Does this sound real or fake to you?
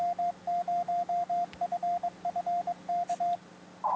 real